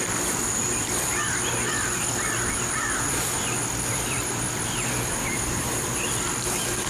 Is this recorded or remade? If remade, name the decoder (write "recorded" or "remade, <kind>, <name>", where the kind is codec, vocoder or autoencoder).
remade, vocoder, BigVGAN v2